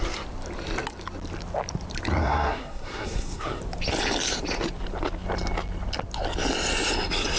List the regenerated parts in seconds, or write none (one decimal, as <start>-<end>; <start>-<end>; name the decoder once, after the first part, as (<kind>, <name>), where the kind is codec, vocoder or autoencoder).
2.2-3.6 (codec, SNAC)